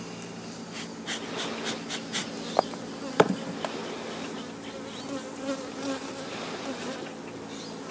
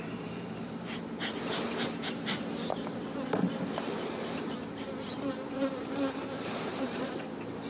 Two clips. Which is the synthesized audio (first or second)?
second